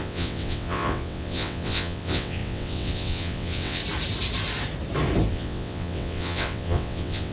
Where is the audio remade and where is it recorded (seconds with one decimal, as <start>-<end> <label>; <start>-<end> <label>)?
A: 0.0-3.8 remade; 3.8-5.3 recorded; 5.3-7.3 remade